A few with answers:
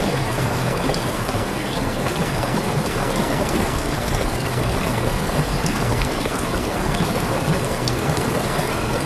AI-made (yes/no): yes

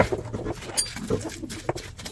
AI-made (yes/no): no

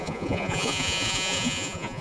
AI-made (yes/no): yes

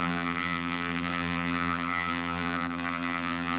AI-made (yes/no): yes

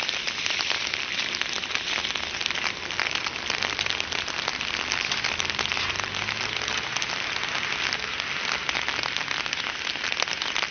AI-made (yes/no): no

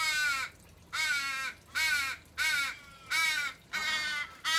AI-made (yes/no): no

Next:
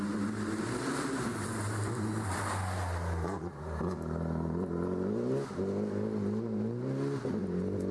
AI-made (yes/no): no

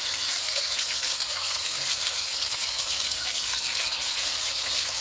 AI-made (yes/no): yes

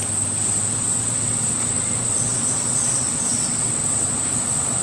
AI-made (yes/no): no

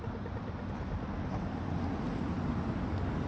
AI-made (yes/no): no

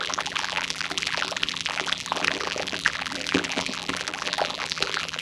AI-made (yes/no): yes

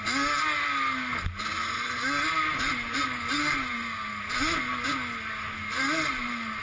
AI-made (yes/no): no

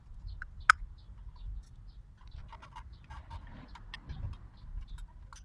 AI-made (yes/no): no